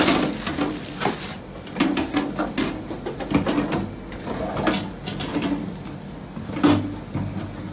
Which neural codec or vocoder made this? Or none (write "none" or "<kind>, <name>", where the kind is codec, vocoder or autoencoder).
none